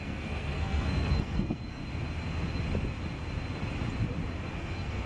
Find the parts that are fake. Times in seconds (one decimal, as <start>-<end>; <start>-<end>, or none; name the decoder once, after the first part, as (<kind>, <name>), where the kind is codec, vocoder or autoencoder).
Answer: 0.0-1.8 (codec, SNAC); 4.6-5.1